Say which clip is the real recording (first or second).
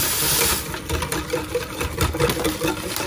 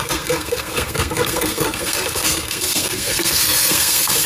first